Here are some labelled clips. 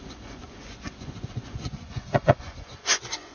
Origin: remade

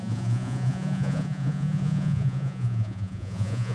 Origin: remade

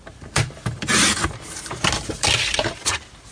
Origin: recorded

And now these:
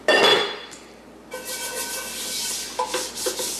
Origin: recorded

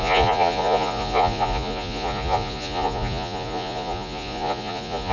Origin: remade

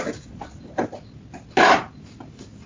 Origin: recorded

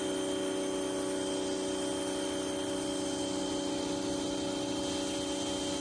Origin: recorded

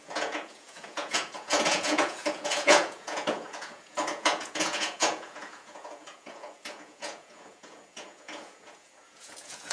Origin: remade